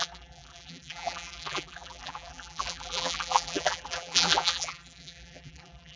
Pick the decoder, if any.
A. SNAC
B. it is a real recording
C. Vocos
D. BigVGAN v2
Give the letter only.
D